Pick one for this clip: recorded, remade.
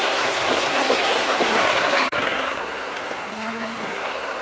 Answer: remade